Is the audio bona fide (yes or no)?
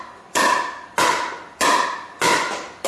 yes